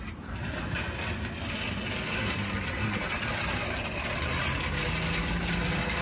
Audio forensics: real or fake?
real